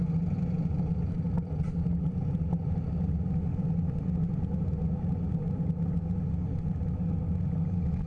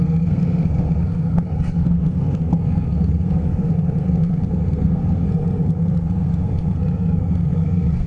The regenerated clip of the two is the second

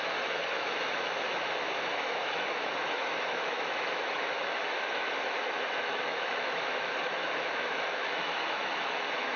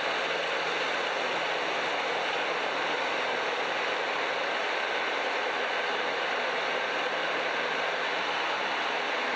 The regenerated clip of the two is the first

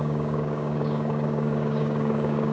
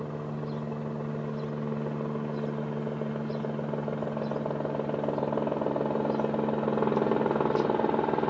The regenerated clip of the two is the first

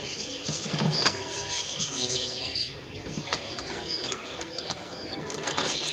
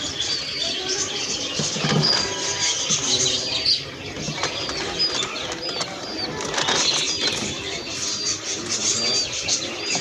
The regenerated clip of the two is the first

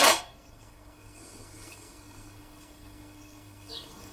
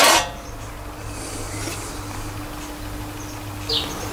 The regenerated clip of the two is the first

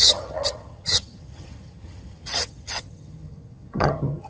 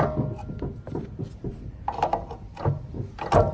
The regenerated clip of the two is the first